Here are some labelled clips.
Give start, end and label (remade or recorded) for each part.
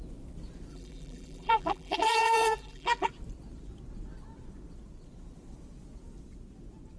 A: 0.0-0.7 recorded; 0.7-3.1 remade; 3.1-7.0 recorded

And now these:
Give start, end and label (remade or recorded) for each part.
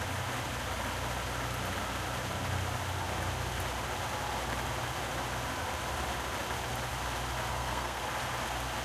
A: 0.0-7.5 recorded; 7.5-8.0 remade; 8.0-8.8 recorded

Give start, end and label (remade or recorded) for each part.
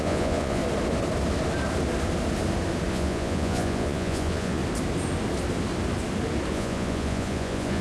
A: 0.0-0.6 remade; 0.6-2.9 recorded; 2.9-4.6 remade; 4.6-6.5 recorded; 6.5-7.8 remade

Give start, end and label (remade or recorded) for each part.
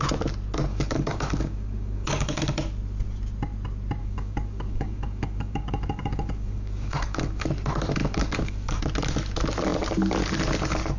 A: 0.0-0.7 recorded; 0.7-2.4 remade; 2.4-4.0 recorded; 4.0-7.5 remade; 7.5-8.0 recorded; 8.0-8.8 remade; 8.8-11.0 recorded